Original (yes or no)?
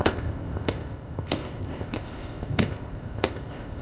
no